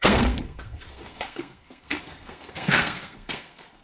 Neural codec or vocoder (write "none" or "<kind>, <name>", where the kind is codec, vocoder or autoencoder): codec, SNAC